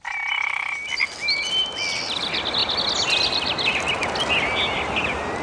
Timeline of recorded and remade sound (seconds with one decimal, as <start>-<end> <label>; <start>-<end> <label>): 0.0-5.4 recorded